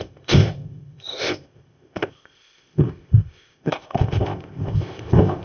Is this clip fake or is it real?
fake